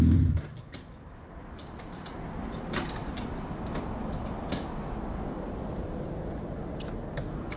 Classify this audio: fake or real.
real